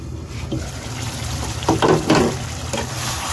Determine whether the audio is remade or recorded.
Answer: recorded